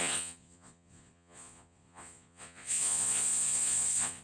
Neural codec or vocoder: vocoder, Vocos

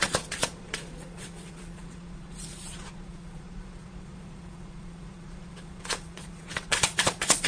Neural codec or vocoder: vocoder, Vocos